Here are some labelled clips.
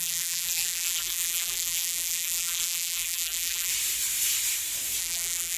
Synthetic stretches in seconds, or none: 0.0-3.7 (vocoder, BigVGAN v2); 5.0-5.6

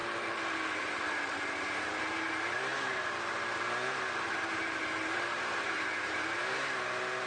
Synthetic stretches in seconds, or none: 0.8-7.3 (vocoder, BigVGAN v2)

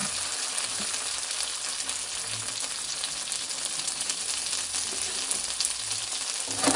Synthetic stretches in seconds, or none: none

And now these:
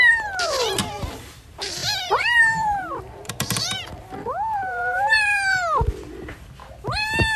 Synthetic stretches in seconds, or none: 0.0-6.6 (vocoder, BigVGAN v2)